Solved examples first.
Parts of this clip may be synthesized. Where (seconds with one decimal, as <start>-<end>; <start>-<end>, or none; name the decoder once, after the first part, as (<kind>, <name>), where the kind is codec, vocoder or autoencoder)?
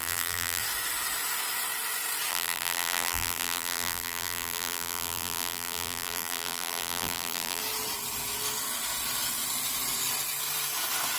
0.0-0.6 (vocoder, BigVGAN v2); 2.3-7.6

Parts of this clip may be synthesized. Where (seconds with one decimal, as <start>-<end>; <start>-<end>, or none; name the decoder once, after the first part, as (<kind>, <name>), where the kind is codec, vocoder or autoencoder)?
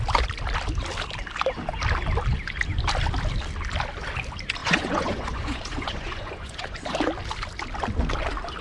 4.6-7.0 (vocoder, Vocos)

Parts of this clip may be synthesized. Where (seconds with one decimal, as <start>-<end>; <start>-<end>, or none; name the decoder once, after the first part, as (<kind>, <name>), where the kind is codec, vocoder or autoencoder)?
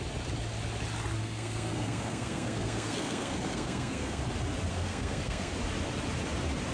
1.2-4.2 (codec, SNAC); 4.7-5.5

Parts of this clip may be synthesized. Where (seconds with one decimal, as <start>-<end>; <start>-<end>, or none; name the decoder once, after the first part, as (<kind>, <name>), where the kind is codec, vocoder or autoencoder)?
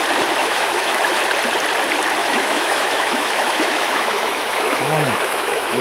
0.4-1.2 (autoencoder, DAC-VAE); 2.2-5.8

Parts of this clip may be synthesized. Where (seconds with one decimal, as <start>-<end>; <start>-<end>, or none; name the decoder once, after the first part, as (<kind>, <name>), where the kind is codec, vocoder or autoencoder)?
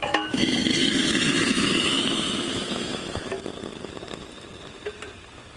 0.0-3.4 (autoencoder, DAC-VAE)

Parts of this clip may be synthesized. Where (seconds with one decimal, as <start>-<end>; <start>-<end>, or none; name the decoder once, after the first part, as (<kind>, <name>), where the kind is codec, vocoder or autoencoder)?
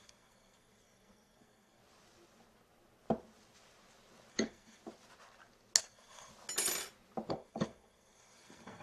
0.0-1.8 (codec, SNAC); 4.3-4.8; 5.8-6.3; 7.3-8.8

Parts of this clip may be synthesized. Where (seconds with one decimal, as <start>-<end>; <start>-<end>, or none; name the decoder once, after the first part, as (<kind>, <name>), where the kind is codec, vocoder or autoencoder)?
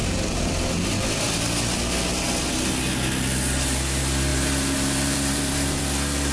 4.3-5.8 (vocoder, BigVGAN v2)